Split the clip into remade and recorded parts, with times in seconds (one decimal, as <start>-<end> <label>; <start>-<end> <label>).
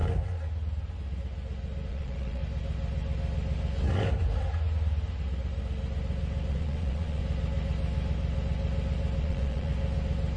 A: 0.0-1.9 recorded; 1.9-2.4 remade; 2.4-6.5 recorded; 6.5-7.2 remade; 7.2-9.2 recorded; 9.2-9.7 remade; 9.7-10.4 recorded